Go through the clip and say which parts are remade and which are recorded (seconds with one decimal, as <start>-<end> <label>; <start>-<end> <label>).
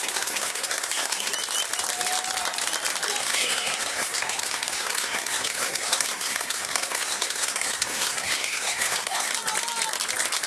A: 0.0-1.3 remade; 1.3-3.2 recorded; 3.2-9.3 remade; 9.3-10.5 recorded